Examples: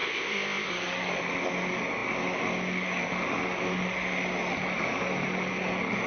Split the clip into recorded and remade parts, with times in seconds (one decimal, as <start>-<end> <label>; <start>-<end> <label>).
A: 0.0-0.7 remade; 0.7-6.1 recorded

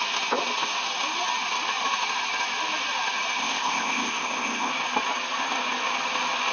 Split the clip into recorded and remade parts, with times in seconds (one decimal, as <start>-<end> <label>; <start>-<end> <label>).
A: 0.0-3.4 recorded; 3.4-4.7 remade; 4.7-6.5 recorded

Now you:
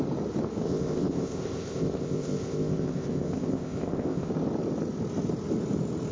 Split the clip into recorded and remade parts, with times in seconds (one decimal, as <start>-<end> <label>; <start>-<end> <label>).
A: 0.0-0.6 recorded; 0.6-4.3 remade; 4.3-6.1 recorded

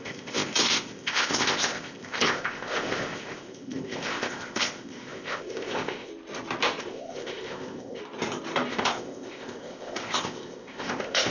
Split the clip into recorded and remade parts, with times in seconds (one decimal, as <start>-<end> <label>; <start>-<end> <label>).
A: 0.0-6.1 remade; 6.1-6.8 recorded; 6.8-8.0 remade; 8.0-8.7 recorded; 8.7-11.3 remade

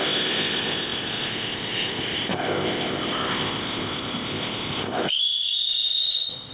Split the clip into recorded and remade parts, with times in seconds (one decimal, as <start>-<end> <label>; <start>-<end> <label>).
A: 0.0-6.5 remade

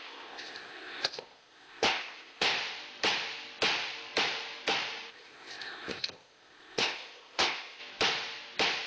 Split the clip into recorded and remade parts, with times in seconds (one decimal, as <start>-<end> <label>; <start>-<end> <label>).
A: 0.0-2.5 remade; 2.5-5.1 recorded; 5.1-7.8 remade; 7.8-8.9 recorded